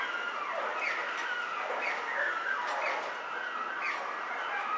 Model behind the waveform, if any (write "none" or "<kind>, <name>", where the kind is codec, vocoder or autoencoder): none